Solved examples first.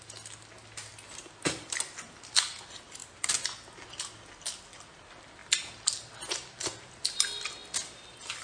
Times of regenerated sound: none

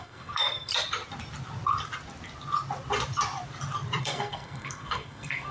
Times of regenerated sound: 0.0-0.7 (codec, SNAC); 4.0-5.5

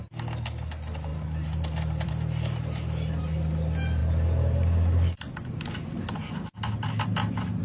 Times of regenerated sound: 1.1-2.1 (vocoder, BigVGAN v2)